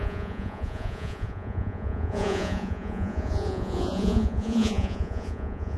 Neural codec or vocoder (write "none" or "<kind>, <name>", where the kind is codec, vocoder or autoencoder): vocoder, Vocos